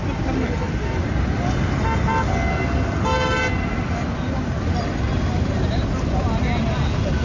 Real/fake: real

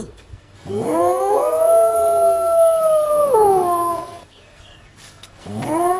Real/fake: fake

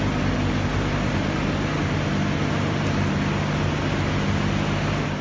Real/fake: real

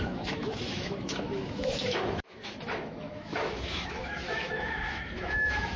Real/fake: fake